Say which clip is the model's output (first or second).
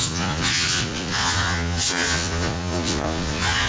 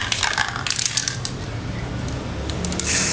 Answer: first